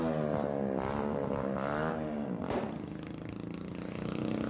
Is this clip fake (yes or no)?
no